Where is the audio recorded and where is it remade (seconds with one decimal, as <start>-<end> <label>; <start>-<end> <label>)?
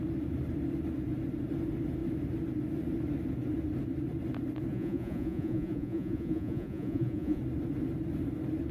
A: 0.0-4.7 recorded; 4.7-7.4 remade; 7.4-8.7 recorded